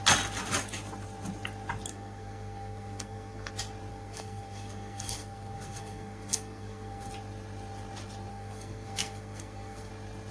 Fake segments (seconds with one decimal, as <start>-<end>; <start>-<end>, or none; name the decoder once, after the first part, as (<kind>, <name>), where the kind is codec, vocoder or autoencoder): 1.9-3.5 (codec, SNAC); 3.9-7.1; 8.3-9.9